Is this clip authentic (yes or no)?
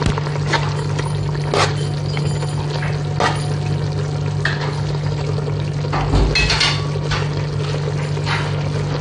yes